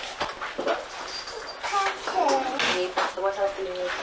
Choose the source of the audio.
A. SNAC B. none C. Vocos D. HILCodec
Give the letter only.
B